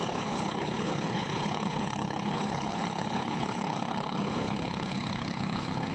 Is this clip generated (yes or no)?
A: yes